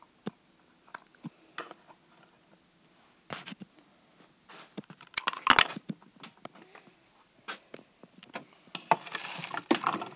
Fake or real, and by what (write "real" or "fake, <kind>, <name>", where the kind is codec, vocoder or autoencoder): real